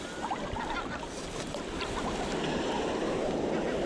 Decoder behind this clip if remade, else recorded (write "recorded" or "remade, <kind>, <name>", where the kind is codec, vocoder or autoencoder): recorded